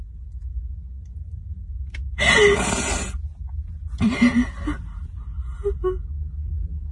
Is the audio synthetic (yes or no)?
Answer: no